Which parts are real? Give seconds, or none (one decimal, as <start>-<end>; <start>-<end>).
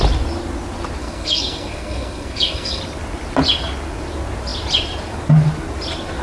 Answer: 0.0-1.0; 2.8-6.2